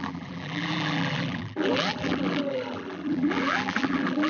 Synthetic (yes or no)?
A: yes